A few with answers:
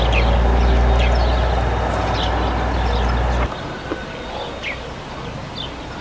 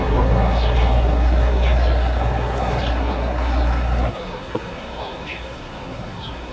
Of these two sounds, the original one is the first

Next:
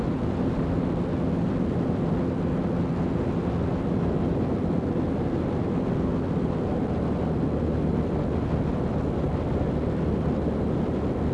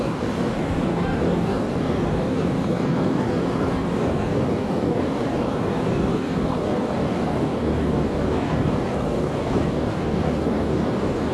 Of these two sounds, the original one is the first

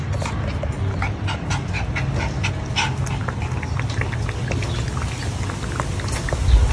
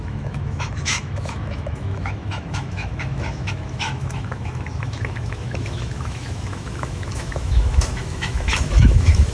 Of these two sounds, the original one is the first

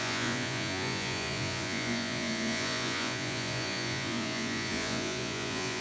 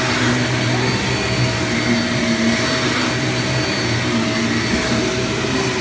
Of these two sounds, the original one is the second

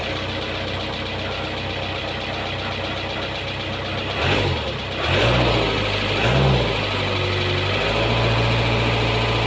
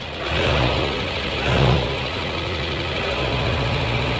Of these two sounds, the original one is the first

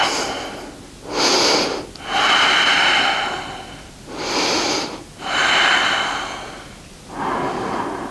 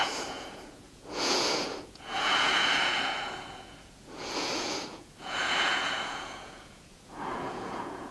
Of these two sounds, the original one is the first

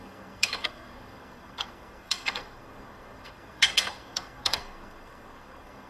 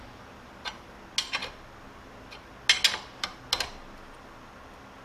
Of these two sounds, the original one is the second